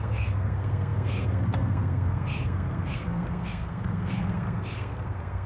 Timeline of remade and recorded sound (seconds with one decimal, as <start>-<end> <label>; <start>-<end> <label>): 0.0-5.5 remade